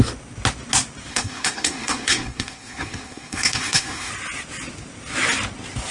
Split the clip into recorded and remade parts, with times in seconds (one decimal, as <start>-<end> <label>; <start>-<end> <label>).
0.0-1.1 recorded; 1.1-4.1 remade; 4.1-5.9 recorded